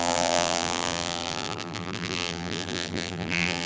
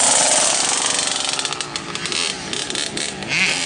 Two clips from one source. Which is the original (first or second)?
second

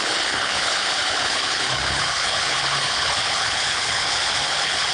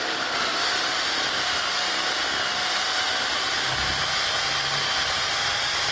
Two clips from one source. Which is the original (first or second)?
second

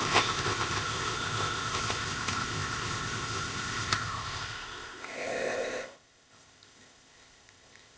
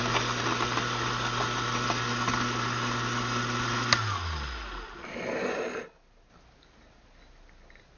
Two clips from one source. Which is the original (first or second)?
second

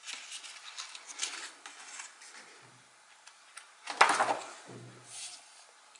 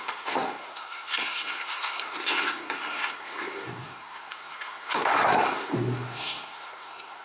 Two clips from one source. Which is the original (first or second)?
first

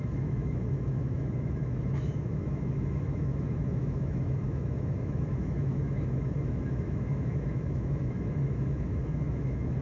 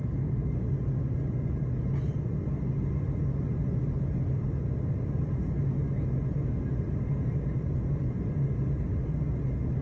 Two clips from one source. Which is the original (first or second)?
second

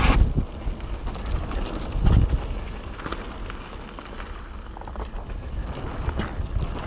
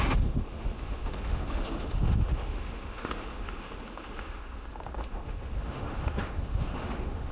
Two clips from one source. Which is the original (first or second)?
first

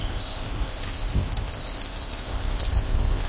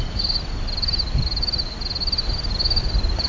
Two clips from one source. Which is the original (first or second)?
second